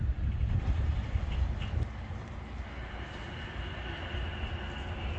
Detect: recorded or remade recorded